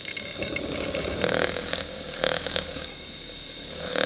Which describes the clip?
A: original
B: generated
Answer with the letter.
B